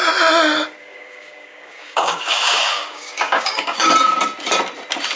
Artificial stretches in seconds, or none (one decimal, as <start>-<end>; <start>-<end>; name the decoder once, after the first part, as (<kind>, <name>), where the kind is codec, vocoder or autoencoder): 0.8-3.9 (codec, DAC)